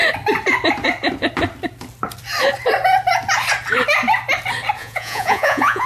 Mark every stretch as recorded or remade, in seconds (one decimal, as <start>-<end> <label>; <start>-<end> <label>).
0.0-4.8 recorded; 4.8-5.9 remade